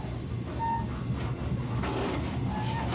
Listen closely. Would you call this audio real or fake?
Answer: real